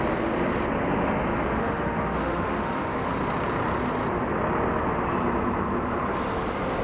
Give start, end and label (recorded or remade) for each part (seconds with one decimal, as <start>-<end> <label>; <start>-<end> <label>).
0.0-1.6 recorded; 1.6-3.1 remade; 3.1-6.8 recorded